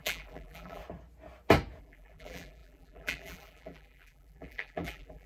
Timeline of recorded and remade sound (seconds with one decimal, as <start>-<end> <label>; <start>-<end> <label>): 0.0-0.8 remade; 0.8-1.8 recorded; 1.8-5.3 remade